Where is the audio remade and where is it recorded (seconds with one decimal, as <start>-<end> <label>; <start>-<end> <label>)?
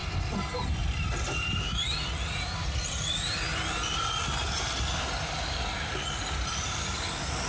0.0-7.5 recorded